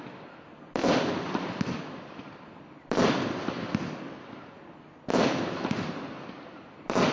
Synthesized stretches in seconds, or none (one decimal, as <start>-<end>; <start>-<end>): none